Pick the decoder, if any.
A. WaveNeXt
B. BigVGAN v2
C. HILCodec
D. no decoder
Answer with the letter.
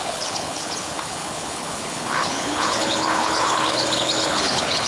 C